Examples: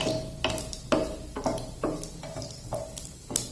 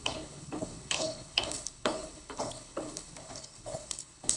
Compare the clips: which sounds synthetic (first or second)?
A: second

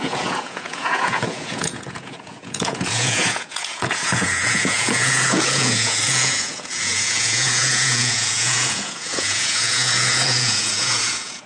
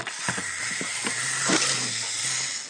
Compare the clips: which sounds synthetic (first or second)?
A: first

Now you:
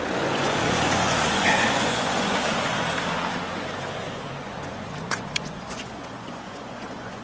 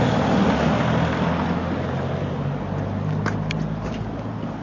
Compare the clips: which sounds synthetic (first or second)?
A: first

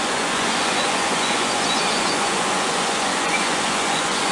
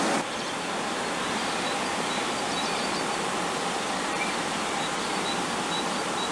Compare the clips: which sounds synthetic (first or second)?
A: first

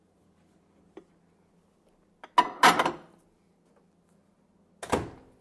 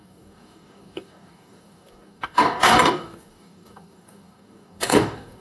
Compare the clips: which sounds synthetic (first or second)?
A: second